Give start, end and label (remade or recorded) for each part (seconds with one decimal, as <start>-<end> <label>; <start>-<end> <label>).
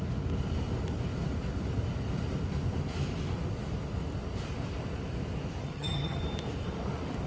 0.0-5.6 recorded; 5.6-6.2 remade; 6.2-7.3 recorded